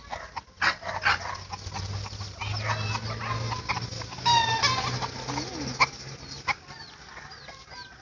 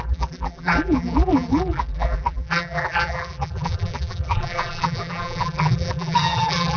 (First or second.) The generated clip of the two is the second